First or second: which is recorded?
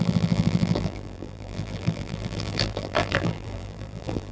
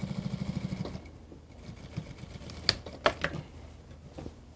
second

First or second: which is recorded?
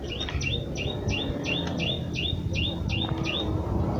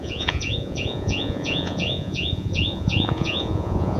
first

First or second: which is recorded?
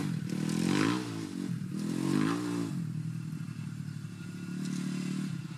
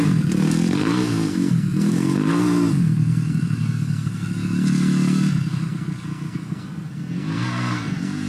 first